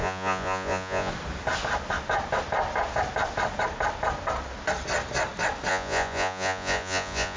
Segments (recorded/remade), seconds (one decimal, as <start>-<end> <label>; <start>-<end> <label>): 0.0-1.1 remade; 1.1-5.7 recorded; 5.7-7.4 remade